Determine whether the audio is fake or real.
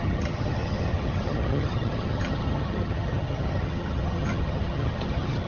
fake